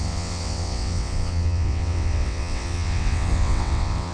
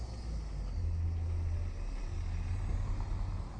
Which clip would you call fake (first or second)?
first